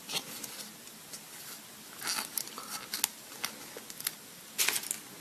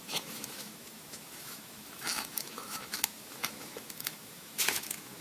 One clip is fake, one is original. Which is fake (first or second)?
second